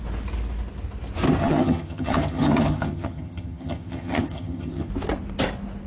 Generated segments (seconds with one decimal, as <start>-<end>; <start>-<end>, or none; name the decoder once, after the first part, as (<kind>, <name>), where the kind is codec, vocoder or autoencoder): 1.4-4.9 (vocoder, HiFi-GAN)

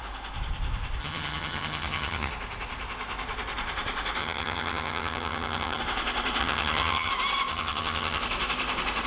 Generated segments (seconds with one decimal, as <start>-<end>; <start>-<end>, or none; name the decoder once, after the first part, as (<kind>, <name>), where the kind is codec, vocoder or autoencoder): 1.0-2.3 (vocoder, HiFi-GAN); 4.2-5.8; 6.4-7.1; 7.5-8.2

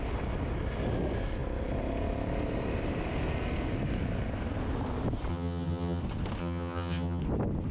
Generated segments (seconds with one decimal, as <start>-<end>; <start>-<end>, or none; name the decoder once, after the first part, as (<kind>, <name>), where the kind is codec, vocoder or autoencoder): 5.3-6.0 (vocoder, HiFi-GAN); 6.4-7.2

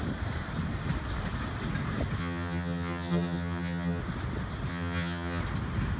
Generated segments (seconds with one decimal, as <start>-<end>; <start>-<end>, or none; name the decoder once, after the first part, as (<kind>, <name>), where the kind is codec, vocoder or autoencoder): 2.2-4.0 (vocoder, HiFi-GAN); 4.7-5.4